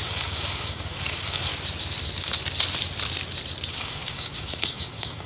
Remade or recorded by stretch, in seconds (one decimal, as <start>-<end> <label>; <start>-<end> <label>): 0.0-1.5 remade; 1.5-3.7 recorded; 3.7-5.3 remade